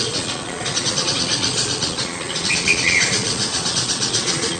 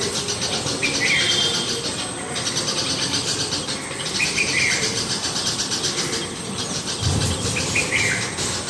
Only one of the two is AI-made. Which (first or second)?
first